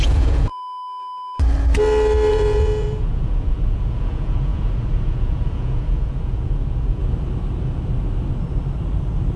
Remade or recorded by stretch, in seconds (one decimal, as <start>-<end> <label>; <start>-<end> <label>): 0.0-0.5 remade; 0.5-2.3 recorded; 2.3-7.0 remade; 7.0-9.4 recorded